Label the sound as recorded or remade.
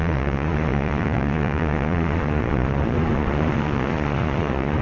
remade